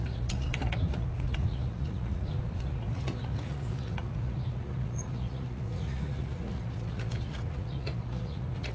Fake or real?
fake